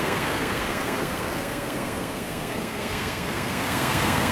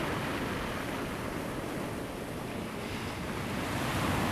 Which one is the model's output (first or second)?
first